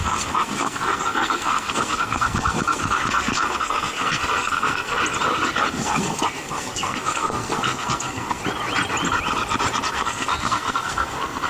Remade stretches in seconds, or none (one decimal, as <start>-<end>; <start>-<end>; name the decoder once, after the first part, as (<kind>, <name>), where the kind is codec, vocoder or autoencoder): 0.0-5.0 (codec, SNAC); 5.7-8.4; 9.9-11.5